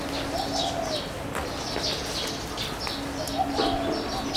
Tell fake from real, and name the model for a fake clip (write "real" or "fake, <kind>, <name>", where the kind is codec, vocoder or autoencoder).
real